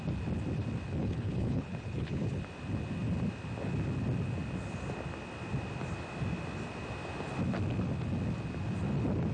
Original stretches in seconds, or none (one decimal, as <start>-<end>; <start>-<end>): 0.0-1.0; 2.4-9.3